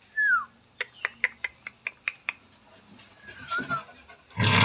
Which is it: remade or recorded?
recorded